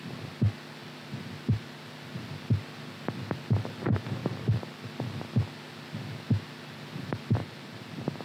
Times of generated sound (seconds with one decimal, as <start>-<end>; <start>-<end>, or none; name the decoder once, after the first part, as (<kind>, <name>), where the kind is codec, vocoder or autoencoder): 0.8-1.8 (vocoder, BigVGAN v2); 4.2-4.7; 7.4-8.2